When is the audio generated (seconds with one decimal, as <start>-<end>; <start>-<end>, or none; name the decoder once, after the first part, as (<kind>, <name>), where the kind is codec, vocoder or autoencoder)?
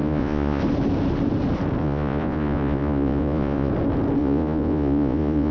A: 0.0-0.6 (vocoder, Vocos); 1.8-3.7; 4.2-5.5